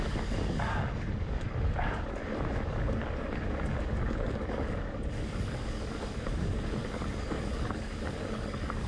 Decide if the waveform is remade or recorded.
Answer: remade